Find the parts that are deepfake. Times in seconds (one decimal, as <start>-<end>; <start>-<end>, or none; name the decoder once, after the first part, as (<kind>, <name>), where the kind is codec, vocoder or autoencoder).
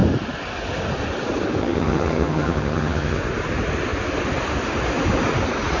1.6-3.2 (vocoder, HiFi-GAN)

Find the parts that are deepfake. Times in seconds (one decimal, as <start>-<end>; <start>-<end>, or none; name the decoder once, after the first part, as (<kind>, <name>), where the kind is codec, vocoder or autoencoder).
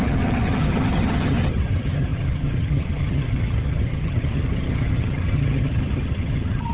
0.0-6.7 (vocoder, HiFi-GAN)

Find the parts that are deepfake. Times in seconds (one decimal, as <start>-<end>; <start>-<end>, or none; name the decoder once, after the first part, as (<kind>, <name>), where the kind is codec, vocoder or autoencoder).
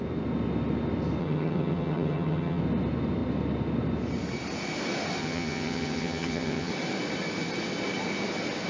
1.2-2.6 (vocoder, HiFi-GAN); 5.2-6.7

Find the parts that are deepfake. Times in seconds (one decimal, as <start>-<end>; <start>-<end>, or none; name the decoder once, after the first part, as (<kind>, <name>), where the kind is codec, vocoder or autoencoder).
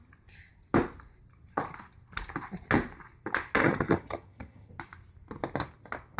3.6-4.7 (vocoder, HiFi-GAN)